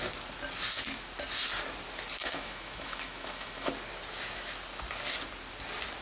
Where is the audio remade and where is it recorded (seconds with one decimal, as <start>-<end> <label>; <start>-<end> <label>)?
0.0-2.2 recorded; 2.2-3.7 remade; 3.7-6.0 recorded